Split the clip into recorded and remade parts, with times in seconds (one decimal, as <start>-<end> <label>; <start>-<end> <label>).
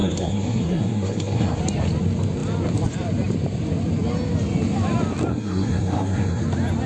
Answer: 0.0-1.6 remade; 1.6-5.3 recorded; 5.3-6.4 remade; 6.4-6.9 recorded